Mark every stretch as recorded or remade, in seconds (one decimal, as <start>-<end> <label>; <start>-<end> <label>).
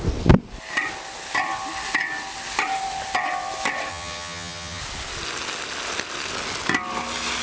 0.0-3.9 recorded; 3.9-4.8 remade; 4.8-7.4 recorded